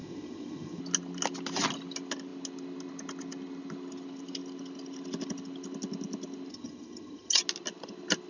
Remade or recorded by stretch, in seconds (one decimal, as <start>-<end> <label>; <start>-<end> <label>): 0.0-0.8 remade; 0.8-6.5 recorded; 6.5-7.4 remade; 7.4-8.3 recorded